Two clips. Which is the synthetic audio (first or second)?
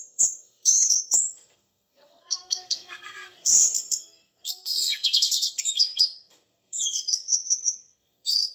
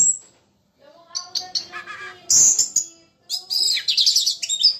first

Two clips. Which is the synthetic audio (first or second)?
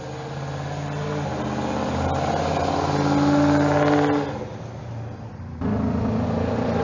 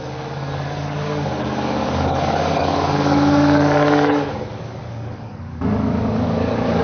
second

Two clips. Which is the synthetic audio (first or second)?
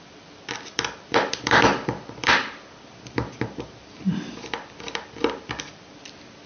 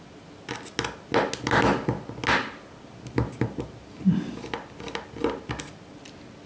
first